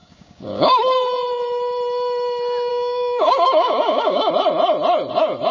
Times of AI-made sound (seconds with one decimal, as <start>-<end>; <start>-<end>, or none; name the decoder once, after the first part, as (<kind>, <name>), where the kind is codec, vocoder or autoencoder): 0.0-0.8 (codec, DAC); 2.7-4.3